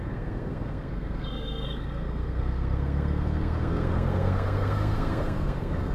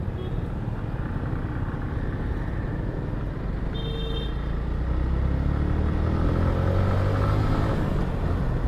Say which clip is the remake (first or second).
first